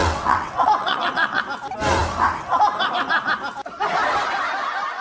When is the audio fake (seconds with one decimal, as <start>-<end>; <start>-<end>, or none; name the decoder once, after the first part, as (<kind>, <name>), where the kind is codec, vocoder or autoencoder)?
0.0-1.4 (vocoder, WaveNeXt)